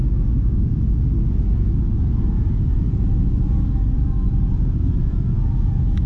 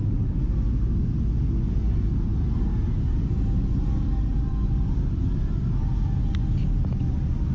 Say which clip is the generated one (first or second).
first